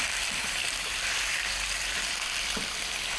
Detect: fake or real fake